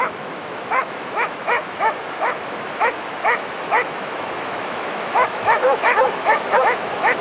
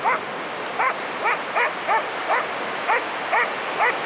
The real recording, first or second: second